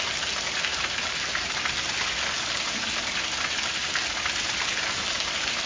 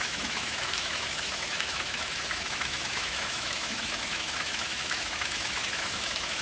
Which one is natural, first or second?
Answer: first